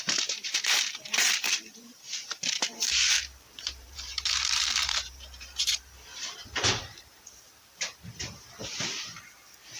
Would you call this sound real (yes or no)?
no